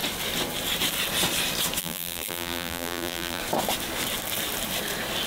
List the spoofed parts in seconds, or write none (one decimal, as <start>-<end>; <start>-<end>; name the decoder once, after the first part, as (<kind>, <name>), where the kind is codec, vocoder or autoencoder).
1.8-3.4 (vocoder, BigVGAN v2)